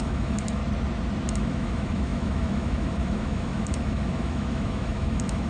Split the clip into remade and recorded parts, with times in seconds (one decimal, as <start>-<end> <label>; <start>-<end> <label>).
0.0-0.6 remade; 0.6-1.3 recorded; 1.3-5.5 remade